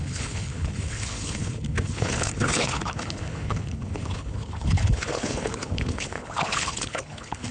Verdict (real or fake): fake